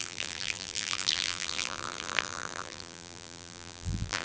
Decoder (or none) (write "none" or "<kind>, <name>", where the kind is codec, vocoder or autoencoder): vocoder, BigVGAN v2